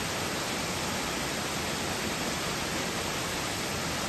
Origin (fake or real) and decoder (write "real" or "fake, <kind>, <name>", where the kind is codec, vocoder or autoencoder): real